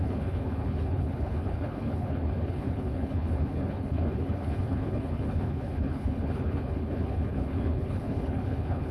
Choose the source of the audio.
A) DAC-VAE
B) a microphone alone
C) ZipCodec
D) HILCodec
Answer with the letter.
D